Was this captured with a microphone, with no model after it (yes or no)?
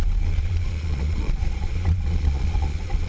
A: no